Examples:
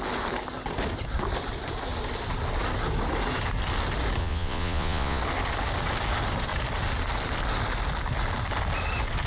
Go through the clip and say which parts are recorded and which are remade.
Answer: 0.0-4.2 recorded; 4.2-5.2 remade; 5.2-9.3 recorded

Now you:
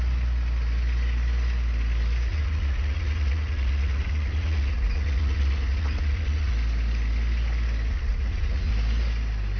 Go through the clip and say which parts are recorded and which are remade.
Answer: 0.0-2.3 recorded; 2.3-6.5 remade; 6.5-7.9 recorded; 7.9-8.7 remade; 8.7-9.6 recorded

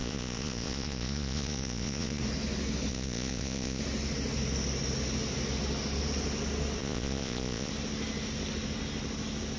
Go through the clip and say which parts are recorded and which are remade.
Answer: 0.0-2.2 remade; 2.2-2.9 recorded; 2.9-3.8 remade; 3.8-6.8 recorded; 6.8-7.7 remade; 7.7-9.6 recorded

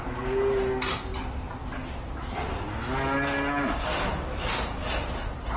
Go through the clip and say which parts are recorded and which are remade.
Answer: 0.0-5.6 recorded

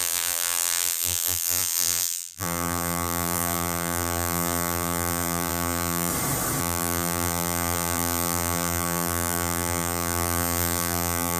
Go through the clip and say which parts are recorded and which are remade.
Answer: 0.0-6.1 remade; 6.1-6.6 recorded; 6.6-11.4 remade